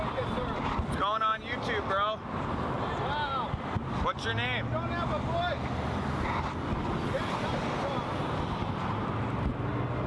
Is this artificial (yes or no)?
no